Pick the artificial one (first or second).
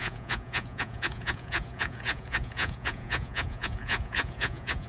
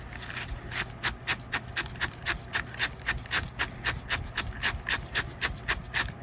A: first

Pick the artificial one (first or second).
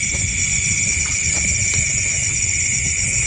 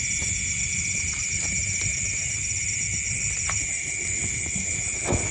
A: first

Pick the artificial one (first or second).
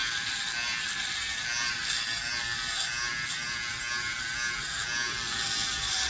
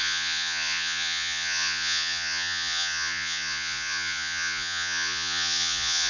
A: second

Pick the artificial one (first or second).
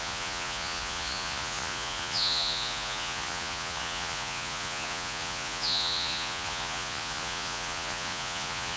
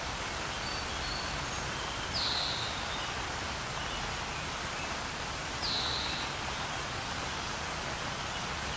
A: first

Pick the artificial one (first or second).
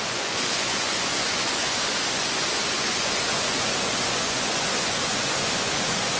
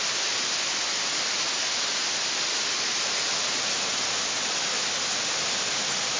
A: first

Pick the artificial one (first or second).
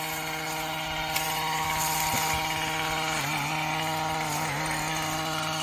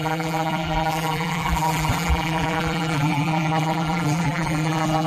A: second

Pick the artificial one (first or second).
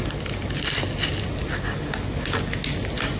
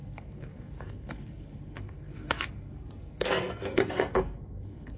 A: second